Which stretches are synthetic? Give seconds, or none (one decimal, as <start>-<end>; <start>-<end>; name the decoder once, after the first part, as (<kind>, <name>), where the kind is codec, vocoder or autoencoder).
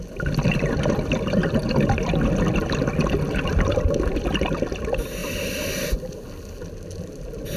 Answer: none